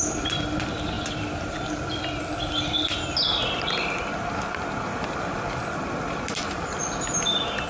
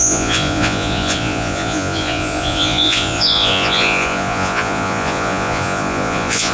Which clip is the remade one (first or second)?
second